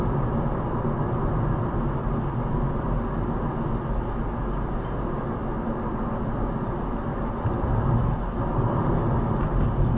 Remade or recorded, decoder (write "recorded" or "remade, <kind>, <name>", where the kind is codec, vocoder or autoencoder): recorded